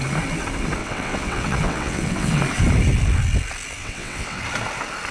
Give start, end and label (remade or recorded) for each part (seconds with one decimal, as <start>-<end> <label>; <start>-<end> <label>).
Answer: 0.0-0.8 recorded; 0.8-2.4 remade; 2.4-3.8 recorded; 3.8-4.4 remade; 4.4-5.1 recorded